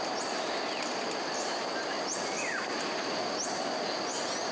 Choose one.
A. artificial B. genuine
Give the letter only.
B